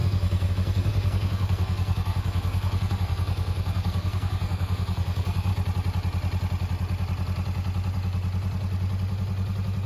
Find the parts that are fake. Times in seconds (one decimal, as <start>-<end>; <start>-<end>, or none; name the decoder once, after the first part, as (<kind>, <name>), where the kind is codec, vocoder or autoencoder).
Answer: 0.0-5.5 (codec, SNAC)